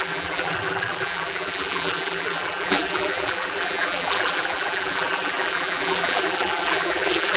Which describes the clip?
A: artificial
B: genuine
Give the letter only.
A